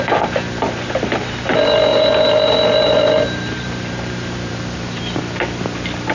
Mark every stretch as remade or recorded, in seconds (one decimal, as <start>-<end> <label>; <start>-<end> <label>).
0.0-1.9 recorded; 1.9-5.2 remade; 5.2-6.1 recorded